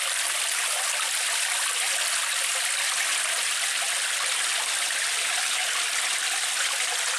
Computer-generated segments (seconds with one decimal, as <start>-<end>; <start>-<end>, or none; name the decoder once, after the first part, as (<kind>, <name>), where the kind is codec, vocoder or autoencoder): none